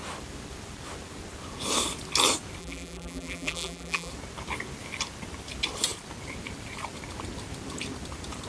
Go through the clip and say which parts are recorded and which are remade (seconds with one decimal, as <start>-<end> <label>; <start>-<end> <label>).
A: 0.0-2.6 recorded; 2.6-4.1 remade; 4.1-8.5 recorded